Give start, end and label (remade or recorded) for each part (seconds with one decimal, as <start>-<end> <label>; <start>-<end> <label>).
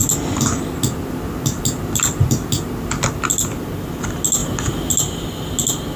0.0-6.0 recorded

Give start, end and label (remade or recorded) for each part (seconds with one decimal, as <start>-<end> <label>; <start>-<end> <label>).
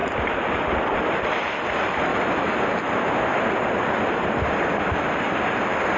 0.0-6.0 recorded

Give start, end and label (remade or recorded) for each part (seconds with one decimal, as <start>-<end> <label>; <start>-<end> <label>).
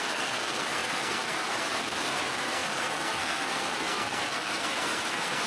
0.0-5.5 remade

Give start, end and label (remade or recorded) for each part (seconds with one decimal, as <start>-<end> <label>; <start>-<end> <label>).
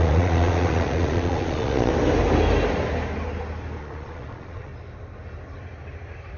0.0-1.9 remade; 1.9-3.8 recorded; 3.8-4.7 remade; 4.7-6.4 recorded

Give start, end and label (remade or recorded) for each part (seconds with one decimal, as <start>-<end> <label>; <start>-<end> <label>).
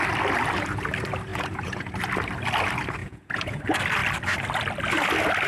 0.0-1.3 recorded; 1.3-1.9 remade; 1.9-3.0 recorded; 3.0-3.6 remade; 3.6-5.5 recorded